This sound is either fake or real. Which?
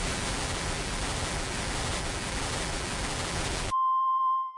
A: fake